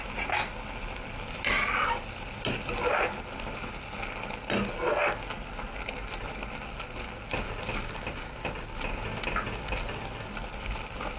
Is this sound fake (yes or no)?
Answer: no